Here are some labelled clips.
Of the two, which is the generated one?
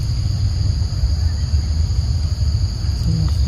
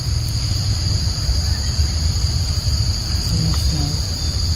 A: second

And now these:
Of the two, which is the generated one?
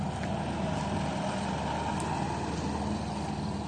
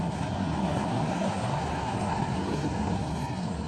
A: second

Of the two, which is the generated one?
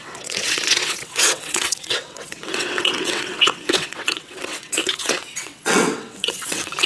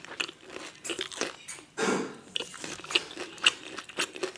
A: first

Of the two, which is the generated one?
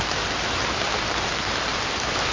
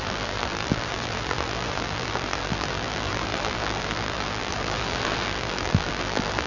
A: second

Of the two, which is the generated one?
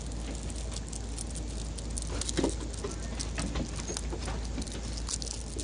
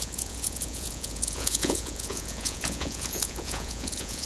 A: second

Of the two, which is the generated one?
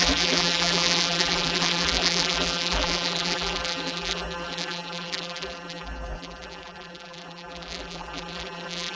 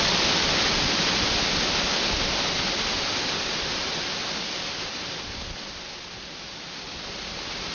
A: first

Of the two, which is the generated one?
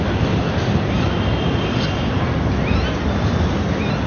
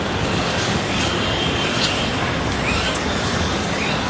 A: second